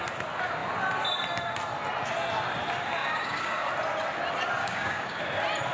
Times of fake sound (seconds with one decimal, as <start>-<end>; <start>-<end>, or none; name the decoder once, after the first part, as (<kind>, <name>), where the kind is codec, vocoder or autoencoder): 3.0-3.7 (codec, DAC); 4.6-5.2